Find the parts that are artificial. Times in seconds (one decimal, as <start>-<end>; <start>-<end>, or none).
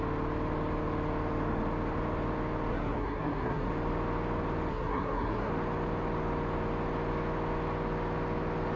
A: 2.7-3.7; 4.7-5.5